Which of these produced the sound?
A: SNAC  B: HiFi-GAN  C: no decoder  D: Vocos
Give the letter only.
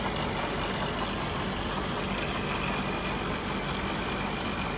C